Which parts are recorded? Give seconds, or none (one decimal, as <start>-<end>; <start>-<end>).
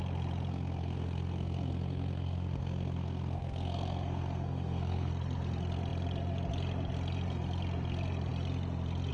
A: 0.0-0.5; 5.1-9.1